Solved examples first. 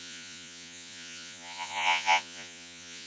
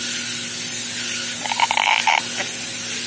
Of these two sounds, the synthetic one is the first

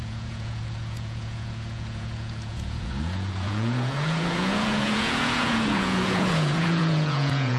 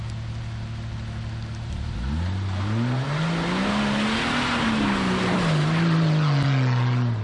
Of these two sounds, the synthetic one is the first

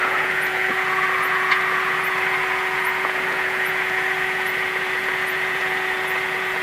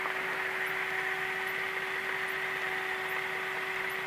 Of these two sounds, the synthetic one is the first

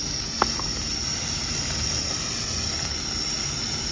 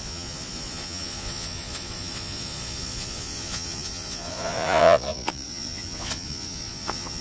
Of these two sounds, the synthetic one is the second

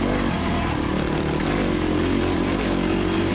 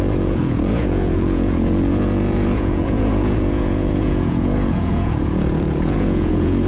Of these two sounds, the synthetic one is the second